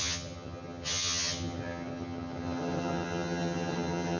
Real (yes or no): no